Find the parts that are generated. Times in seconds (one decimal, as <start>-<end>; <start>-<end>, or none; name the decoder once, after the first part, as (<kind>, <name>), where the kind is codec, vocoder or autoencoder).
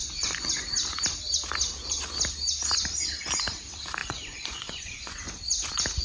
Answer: 0.0-0.5 (vocoder, Vocos); 4.0-5.3